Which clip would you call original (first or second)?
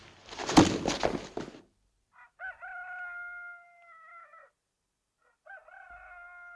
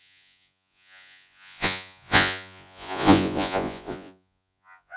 first